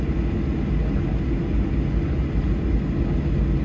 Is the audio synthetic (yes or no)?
no